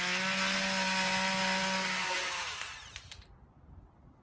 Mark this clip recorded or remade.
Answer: recorded